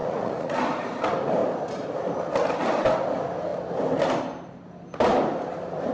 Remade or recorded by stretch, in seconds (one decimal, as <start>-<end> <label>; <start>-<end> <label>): 0.0-0.6 remade; 0.6-5.9 recorded